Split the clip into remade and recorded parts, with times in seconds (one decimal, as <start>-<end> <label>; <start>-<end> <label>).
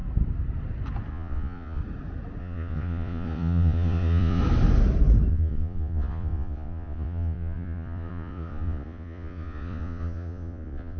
0.0-1.1 recorded; 1.1-1.8 remade; 1.8-2.4 recorded; 2.4-4.4 remade; 4.4-5.3 recorded; 5.3-11.0 remade